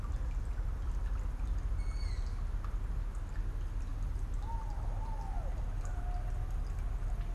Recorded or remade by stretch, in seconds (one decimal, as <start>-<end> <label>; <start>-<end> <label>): 0.0-7.3 recorded